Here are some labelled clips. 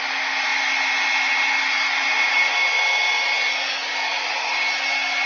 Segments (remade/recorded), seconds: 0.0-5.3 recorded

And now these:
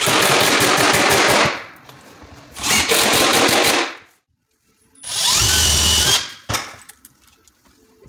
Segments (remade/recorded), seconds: 0.0-8.1 remade

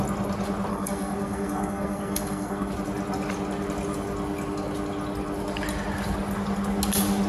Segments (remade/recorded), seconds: 0.0-0.7 recorded; 0.7-2.7 remade; 2.7-7.3 recorded

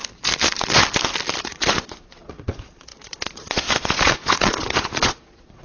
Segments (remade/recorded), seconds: 0.0-1.5 recorded; 1.5-5.6 remade